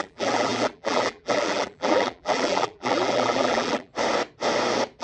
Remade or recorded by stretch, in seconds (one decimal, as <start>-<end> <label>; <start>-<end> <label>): 0.0-3.9 remade; 3.9-5.0 recorded